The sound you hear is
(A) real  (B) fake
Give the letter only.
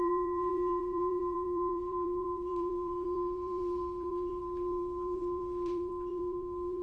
B